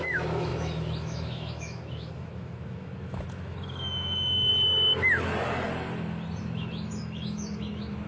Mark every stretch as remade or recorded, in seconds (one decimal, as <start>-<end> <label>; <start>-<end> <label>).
0.0-4.5 remade; 4.5-6.4 recorded; 6.4-8.1 remade